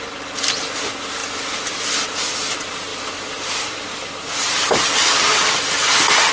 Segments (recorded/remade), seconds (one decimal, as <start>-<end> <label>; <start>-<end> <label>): 0.0-2.9 recorded; 2.9-5.6 remade; 5.6-6.3 recorded